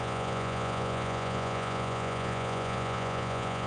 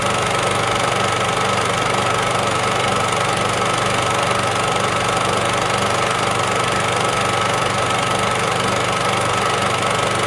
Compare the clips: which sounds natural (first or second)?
second